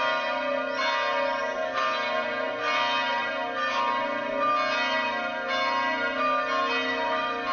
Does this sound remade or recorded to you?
recorded